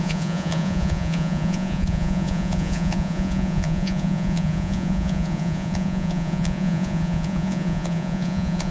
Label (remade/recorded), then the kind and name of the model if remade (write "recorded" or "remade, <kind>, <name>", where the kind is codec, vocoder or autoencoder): remade, vocoder, Vocos